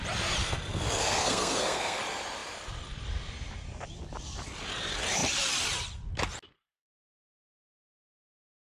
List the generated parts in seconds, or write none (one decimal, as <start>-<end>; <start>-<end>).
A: 0.4-2.0